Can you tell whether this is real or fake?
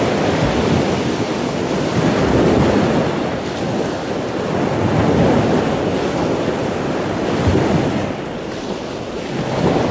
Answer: real